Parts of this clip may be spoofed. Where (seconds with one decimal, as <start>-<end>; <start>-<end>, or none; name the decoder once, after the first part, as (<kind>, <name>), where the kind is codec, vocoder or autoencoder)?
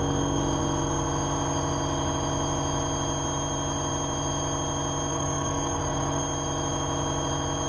5.1-6.2 (codec, DAC)